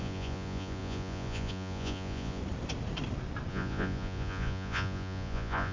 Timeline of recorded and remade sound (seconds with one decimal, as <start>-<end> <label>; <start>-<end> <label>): 0.0-2.4 remade; 2.4-3.5 recorded; 3.5-5.7 remade